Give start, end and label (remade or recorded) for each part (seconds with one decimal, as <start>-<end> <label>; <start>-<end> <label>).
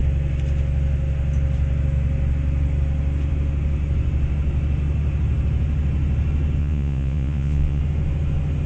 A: 0.0-6.6 recorded; 6.6-7.8 remade; 7.8-8.7 recorded